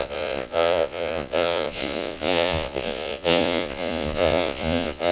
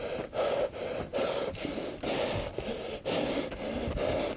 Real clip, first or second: second